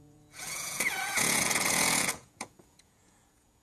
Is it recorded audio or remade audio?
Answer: remade